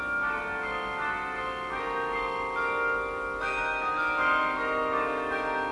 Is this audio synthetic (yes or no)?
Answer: no